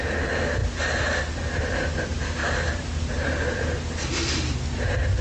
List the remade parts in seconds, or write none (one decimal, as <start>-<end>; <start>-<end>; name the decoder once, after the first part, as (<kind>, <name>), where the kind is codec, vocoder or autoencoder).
none